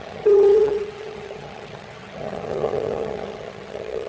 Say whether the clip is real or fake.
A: fake